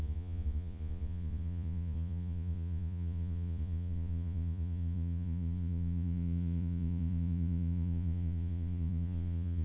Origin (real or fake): fake